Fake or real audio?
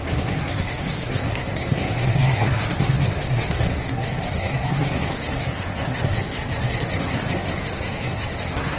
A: fake